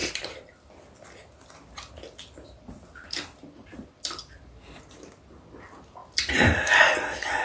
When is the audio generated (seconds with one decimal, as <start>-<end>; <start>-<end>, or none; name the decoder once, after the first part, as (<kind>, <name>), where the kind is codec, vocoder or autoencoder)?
0.0-0.7 (vocoder, BigVGAN v2); 3.6-4.4; 6.0-7.4